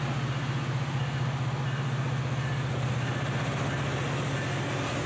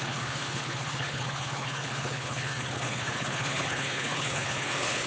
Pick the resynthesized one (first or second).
second